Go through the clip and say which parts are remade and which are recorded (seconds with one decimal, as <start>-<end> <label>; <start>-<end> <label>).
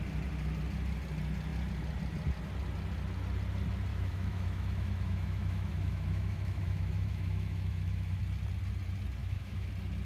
0.0-3.9 recorded; 3.9-8.2 remade; 8.2-9.2 recorded; 9.2-9.7 remade; 9.7-10.1 recorded